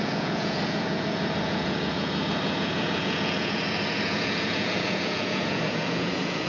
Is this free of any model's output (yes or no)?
no